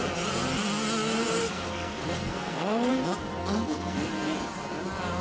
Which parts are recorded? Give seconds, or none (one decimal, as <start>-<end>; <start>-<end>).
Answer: 0.0-1.4; 2.9-3.4; 4.1-5.2

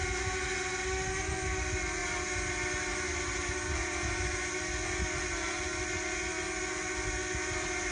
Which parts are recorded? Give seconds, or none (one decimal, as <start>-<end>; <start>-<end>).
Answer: 0.0-7.9

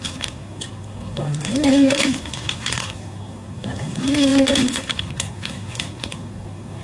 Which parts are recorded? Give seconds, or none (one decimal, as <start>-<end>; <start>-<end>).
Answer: none

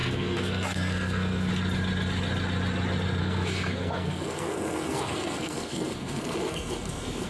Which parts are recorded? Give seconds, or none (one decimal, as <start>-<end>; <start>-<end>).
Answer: 1.5-3.2

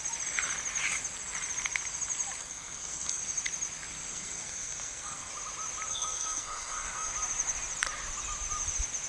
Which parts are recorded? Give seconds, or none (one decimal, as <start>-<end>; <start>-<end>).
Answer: 0.0-2.4; 3.2-4.1; 5.3-5.9; 7.1-9.1

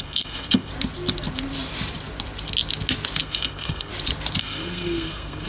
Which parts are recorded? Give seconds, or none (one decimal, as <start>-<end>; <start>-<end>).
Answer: 0.7-3.2; 3.9-4.4

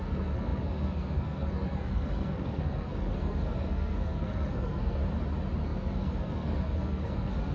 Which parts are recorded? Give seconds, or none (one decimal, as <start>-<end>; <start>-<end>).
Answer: 5.0-5.6